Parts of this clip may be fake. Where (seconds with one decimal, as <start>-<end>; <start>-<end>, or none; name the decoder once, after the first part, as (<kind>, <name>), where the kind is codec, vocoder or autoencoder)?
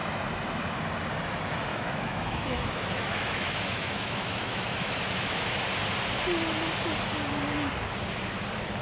1.7-5.6 (autoencoder, DAC-VAE)